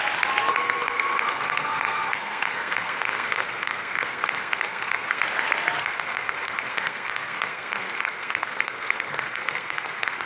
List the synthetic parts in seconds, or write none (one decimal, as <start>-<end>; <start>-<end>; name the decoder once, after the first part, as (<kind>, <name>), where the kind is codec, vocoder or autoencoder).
0.5-5.2 (codec, SNAC); 5.8-10.3